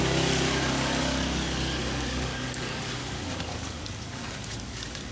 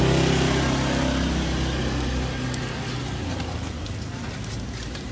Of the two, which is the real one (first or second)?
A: second